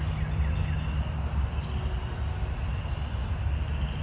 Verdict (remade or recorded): recorded